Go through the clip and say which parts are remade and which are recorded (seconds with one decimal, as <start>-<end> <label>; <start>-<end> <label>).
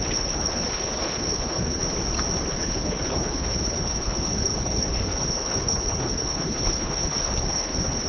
0.0-1.8 remade; 1.8-2.5 recorded; 2.5-8.1 remade